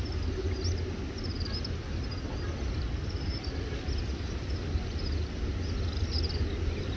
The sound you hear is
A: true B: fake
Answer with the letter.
A